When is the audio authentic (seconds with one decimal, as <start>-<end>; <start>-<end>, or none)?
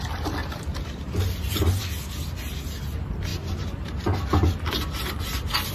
0.0-3.3; 4.5-5.7